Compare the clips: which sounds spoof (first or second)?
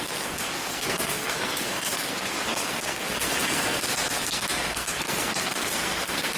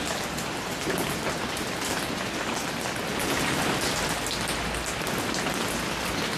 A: first